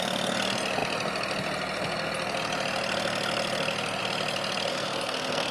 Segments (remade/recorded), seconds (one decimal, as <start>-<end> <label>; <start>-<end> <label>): 0.0-4.7 recorded; 4.7-5.5 remade